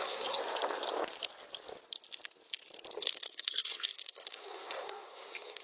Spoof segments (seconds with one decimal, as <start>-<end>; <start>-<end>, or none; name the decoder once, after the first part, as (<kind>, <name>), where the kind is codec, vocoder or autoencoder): 0.0-0.4 (codec, SNAC); 2.9-5.6